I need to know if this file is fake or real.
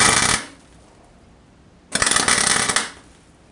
real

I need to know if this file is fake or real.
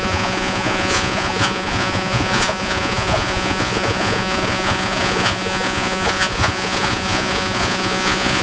fake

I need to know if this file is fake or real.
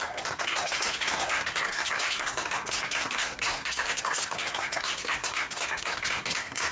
fake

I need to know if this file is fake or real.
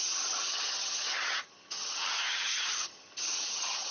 fake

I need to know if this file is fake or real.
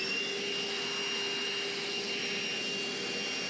real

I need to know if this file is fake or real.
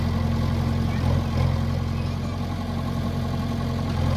real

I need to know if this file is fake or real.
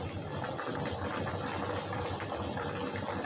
real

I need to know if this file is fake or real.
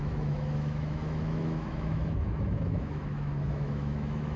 fake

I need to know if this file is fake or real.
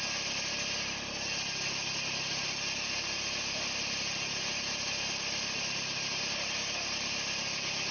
real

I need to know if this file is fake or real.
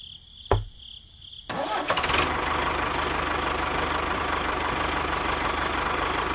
real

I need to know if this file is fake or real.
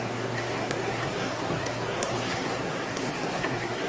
fake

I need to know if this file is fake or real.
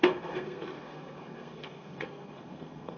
fake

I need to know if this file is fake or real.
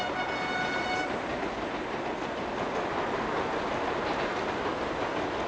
real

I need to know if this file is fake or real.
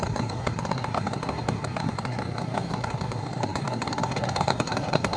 fake